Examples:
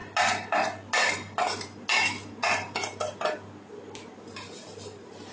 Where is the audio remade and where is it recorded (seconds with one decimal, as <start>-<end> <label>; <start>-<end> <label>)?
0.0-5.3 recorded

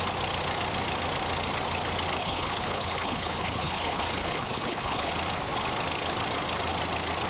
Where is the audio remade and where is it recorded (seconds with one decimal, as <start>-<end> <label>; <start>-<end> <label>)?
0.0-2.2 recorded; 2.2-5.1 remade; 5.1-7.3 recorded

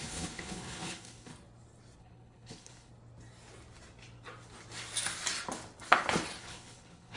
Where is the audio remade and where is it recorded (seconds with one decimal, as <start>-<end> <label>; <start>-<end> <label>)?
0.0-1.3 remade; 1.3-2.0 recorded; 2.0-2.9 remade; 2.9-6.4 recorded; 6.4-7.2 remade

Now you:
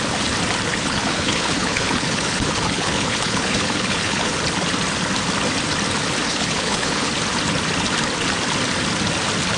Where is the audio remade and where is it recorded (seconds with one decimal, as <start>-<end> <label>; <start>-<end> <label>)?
0.0-0.7 recorded; 0.7-4.4 remade; 4.4-6.3 recorded; 6.3-7.1 remade; 7.1-9.6 recorded

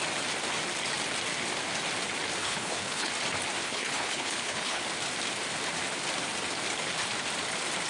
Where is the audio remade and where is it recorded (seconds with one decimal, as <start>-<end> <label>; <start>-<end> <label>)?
0.0-2.4 recorded; 2.4-3.1 remade; 3.1-3.6 recorded; 3.6-4.8 remade; 4.8-7.9 recorded

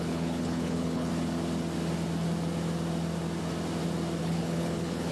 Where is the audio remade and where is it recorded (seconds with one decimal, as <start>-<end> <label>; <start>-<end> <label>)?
0.0-1.1 remade; 1.1-4.2 recorded; 4.2-5.1 remade